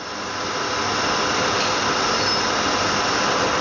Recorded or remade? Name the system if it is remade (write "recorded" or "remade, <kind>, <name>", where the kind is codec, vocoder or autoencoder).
recorded